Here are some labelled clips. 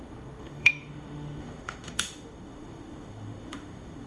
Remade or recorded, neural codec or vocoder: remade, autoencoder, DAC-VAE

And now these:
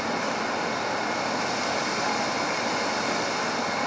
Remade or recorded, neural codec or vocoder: recorded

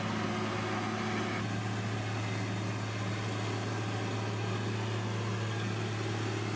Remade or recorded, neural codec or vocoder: recorded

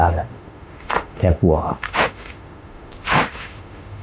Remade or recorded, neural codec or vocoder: remade, autoencoder, DAC-VAE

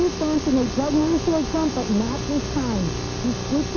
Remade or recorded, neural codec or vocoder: recorded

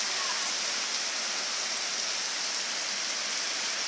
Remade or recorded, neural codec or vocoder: recorded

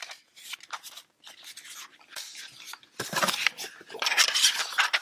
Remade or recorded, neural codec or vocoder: recorded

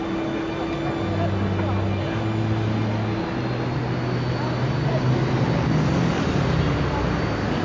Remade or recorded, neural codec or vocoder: recorded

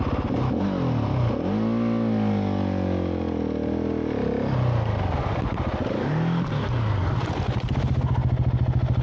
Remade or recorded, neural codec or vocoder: recorded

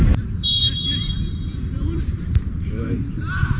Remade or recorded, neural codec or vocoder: remade, vocoder, BigVGAN v2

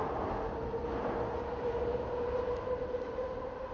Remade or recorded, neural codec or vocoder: recorded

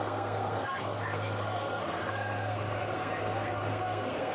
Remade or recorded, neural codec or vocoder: remade, codec, SNAC